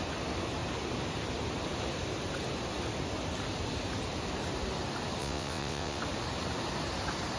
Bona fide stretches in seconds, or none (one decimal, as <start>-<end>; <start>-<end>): 0.0-5.2; 6.0-7.4